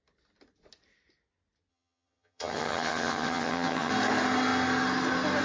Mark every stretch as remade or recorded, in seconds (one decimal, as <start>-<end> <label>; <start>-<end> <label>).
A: 0.0-1.7 recorded; 1.7-3.9 remade; 3.9-5.4 recorded